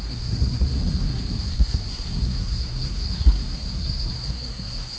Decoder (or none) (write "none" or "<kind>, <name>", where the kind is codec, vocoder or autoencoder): codec, SNAC